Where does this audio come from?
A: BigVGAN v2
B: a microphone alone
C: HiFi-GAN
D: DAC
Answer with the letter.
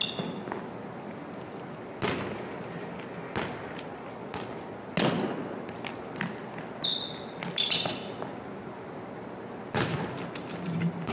B